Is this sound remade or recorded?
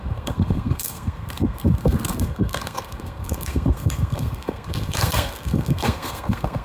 remade